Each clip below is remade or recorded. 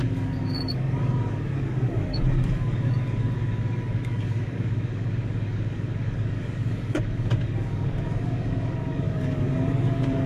remade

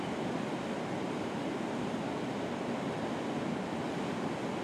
recorded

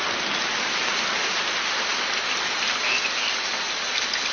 recorded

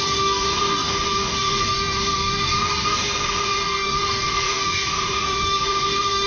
remade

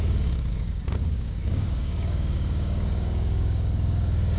remade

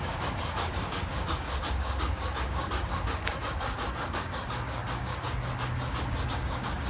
remade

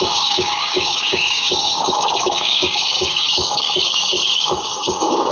remade